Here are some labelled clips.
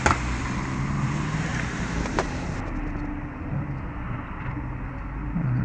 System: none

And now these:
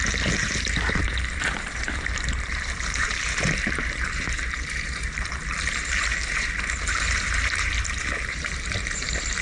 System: vocoder, BigVGAN v2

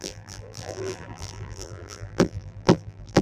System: vocoder, BigVGAN v2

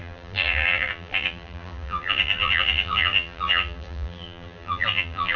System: vocoder, BigVGAN v2